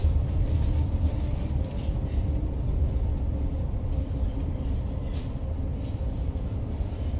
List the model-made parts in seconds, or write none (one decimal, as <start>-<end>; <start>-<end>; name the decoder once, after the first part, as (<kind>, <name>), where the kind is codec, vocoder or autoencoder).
0.0-7.2 (vocoder, BigVGAN v2)